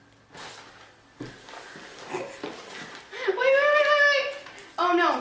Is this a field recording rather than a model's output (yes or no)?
yes